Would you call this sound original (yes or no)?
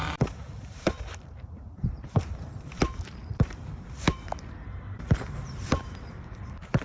no